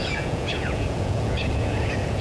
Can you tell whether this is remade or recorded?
remade